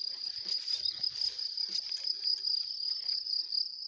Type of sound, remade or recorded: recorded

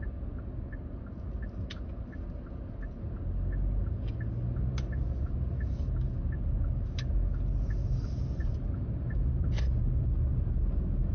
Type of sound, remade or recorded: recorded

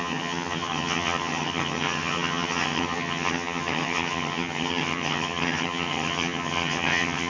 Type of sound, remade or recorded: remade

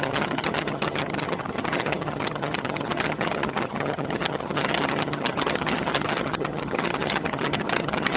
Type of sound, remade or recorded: remade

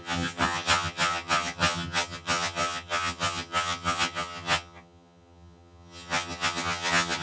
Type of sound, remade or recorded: remade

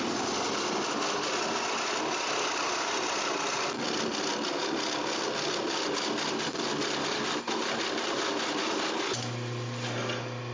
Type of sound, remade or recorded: recorded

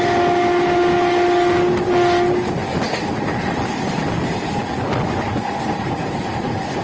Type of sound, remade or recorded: recorded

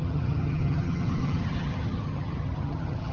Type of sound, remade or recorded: remade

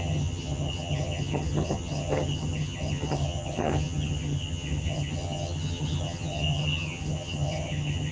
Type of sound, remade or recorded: remade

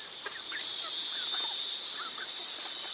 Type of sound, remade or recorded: recorded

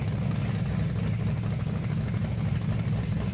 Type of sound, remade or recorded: recorded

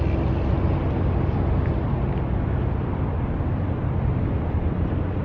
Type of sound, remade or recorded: recorded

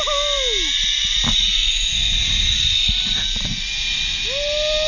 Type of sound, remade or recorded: recorded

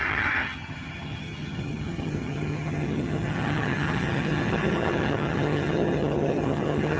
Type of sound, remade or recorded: remade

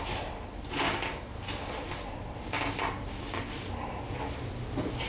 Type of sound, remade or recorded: recorded